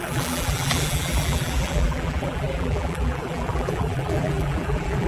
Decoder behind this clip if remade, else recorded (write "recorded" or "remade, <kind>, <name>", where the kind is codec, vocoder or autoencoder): remade, vocoder, BigVGAN v2